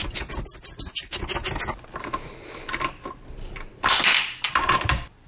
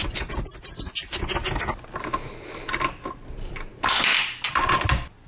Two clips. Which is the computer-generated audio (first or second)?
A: first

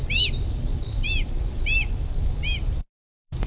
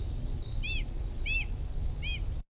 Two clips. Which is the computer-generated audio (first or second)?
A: first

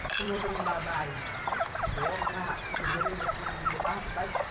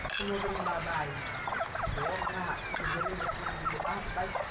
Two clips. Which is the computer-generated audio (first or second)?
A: first